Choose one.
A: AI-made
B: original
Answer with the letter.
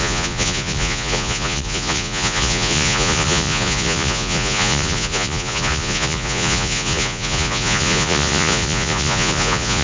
A